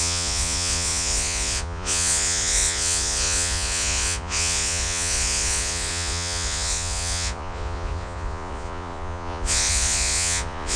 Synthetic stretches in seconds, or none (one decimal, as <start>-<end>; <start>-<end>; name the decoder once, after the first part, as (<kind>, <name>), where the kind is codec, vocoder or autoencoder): 0.0-10.8 (vocoder, Vocos)